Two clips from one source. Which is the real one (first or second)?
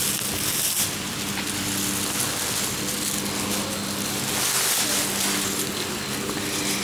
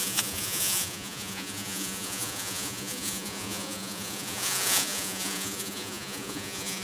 first